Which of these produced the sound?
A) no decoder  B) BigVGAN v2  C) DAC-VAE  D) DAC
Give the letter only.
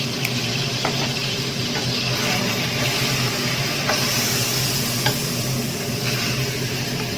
A